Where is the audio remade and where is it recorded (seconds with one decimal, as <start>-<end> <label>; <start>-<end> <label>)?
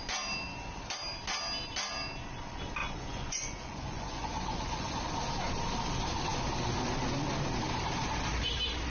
0.0-2.8 recorded; 2.8-5.0 remade; 5.0-8.9 recorded